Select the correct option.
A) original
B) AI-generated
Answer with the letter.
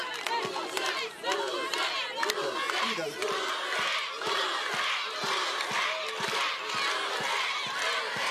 A